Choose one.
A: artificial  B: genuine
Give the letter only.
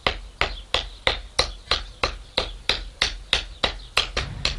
B